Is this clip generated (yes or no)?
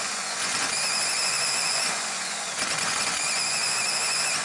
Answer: yes